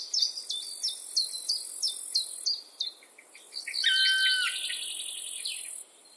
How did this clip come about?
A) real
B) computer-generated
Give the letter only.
A